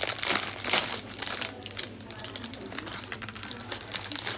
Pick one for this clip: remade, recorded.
remade